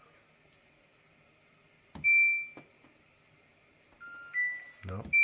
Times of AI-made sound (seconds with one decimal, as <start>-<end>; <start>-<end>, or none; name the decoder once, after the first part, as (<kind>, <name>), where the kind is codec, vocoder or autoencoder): none